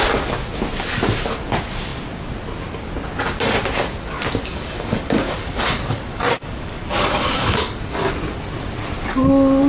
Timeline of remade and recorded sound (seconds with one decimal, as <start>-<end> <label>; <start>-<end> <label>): 0.0-4.5 recorded; 4.5-8.1 remade; 8.1-9.7 recorded

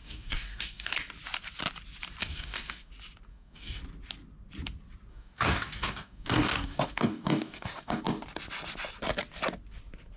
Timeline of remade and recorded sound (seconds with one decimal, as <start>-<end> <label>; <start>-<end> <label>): 0.0-0.9 remade; 0.9-2.2 recorded; 2.2-2.9 remade; 2.9-3.3 recorded; 3.3-3.8 remade; 3.8-5.1 recorded; 5.1-8.0 remade; 8.0-10.2 recorded

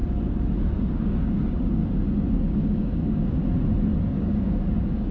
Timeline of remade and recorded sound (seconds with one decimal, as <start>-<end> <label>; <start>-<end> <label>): 0.0-0.7 recorded; 0.7-1.8 remade; 1.8-2.3 recorded; 2.3-3.4 remade; 3.4-4.0 recorded; 4.0-5.1 remade

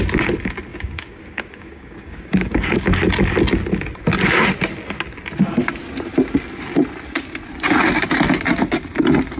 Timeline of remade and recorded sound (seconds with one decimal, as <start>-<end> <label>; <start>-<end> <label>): 0.0-0.7 recorded; 0.7-2.8 remade; 2.8-9.4 recorded

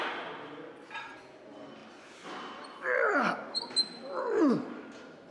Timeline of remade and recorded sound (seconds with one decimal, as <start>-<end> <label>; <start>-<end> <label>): 0.0-5.3 recorded

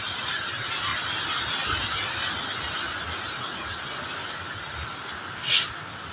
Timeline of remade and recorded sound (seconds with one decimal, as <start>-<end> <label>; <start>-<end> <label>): 0.0-6.1 recorded

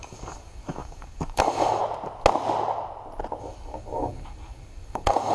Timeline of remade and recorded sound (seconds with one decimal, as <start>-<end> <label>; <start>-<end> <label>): 0.0-1.8 remade; 1.8-3.4 recorded; 3.4-5.3 remade

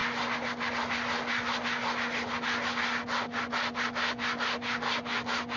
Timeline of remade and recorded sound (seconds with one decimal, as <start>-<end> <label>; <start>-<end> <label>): 0.0-5.6 recorded